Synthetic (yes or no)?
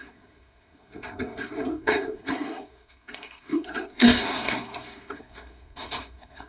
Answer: yes